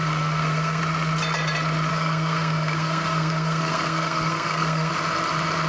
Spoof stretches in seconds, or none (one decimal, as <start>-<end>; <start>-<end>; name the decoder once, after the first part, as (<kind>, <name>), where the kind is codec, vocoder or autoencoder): 0.0-0.8 (codec, SNAC); 1.9-4.9